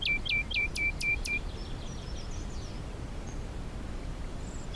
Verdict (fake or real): fake